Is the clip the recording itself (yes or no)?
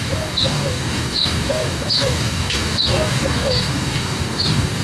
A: no